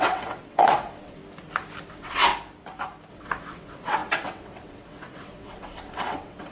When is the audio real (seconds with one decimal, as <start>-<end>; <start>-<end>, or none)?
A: 1.2-1.9; 2.3-3.1